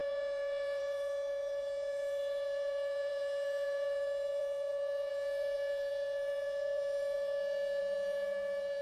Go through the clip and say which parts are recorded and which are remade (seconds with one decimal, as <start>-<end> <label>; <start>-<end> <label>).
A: 0.0-8.8 remade